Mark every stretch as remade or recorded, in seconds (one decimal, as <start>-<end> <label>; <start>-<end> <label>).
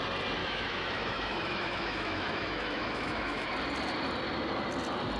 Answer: 0.0-0.4 recorded; 0.4-3.5 remade; 3.5-5.2 recorded